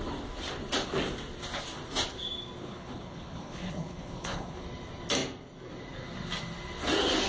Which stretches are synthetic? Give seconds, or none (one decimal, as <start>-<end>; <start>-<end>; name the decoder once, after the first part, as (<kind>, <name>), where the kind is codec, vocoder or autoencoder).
2.6-4.6 (codec, HILCodec)